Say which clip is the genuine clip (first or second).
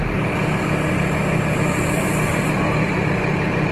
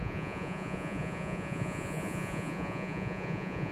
first